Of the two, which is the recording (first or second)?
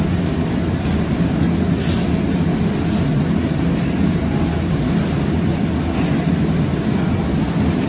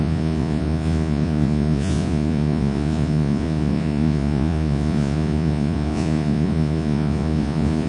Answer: first